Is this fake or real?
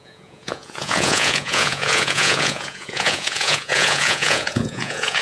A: fake